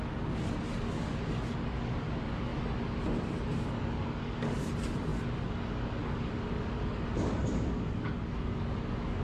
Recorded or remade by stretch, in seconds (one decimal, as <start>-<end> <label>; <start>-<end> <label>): 0.0-2.5 remade; 2.5-3.6 recorded; 3.6-9.2 remade